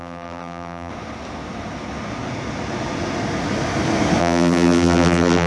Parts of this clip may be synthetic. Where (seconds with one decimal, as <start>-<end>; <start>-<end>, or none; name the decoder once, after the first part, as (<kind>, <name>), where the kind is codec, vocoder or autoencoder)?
0.0-0.9 (vocoder, BigVGAN v2); 4.2-5.5

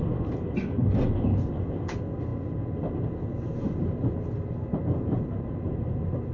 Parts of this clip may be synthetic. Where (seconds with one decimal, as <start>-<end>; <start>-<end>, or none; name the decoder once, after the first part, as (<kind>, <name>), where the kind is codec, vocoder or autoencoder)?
none

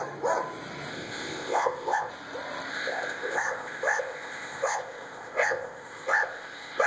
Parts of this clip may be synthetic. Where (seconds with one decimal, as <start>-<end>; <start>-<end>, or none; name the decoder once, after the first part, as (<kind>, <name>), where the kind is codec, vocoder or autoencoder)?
0.9-2.1 (codec, ZipCodec); 2.7-6.9

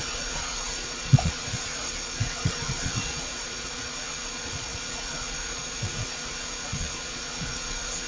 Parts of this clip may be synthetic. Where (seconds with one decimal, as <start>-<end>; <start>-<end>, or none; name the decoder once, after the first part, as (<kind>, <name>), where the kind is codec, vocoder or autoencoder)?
0.0-8.1 (vocoder, Vocos)